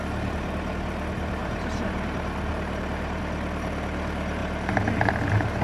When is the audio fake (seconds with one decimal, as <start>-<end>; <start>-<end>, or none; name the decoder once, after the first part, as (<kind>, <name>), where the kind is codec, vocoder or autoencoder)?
1.4-3.2 (vocoder, BigVGAN v2); 4.4-5.1